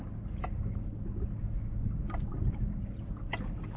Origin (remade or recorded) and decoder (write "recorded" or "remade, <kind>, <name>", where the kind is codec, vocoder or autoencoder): recorded